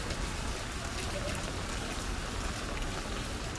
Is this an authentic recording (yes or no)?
yes